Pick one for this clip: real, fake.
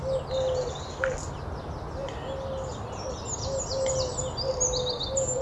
real